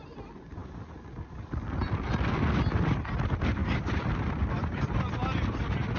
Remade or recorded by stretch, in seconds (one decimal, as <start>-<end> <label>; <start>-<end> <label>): 0.0-3.6 recorded; 3.6-4.4 remade; 4.4-6.0 recorded